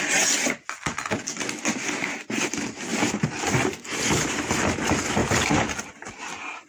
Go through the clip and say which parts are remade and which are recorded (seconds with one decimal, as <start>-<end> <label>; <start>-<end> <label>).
0.0-2.9 recorded; 2.9-4.6 remade; 4.6-6.7 recorded